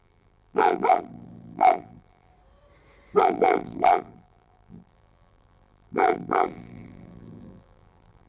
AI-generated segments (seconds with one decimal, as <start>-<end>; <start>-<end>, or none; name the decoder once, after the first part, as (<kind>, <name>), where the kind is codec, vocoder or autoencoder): 0.0-2.3 (vocoder, BigVGAN v2); 3.2-8.3